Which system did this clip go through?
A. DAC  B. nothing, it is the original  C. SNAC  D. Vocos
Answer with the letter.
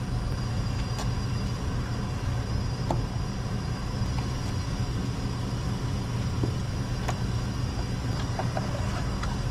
B